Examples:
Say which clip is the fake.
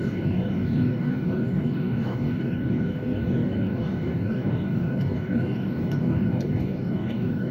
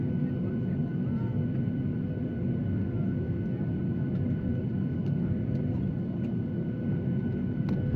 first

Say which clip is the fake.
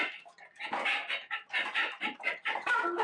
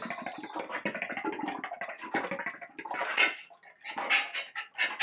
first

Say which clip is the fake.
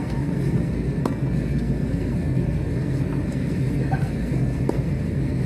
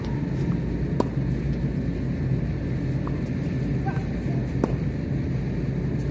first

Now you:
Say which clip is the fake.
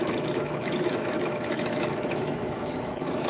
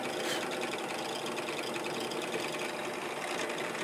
first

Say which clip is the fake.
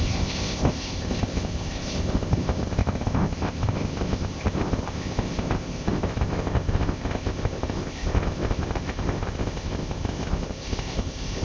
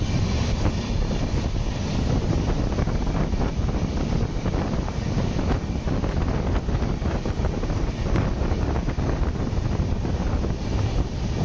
first